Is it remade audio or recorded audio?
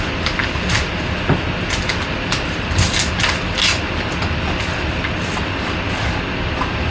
recorded